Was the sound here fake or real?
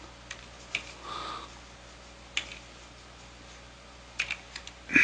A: real